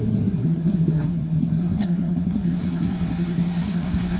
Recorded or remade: remade